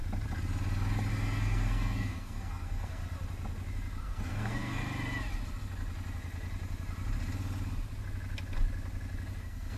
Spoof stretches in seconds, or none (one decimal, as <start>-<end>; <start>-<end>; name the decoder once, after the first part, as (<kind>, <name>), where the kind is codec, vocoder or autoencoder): 1.1-3.0 (codec, SNAC); 4.0-4.8; 9.4-9.8